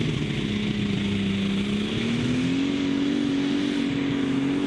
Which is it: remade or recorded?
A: recorded